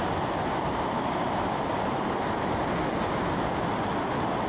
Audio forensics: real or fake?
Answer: real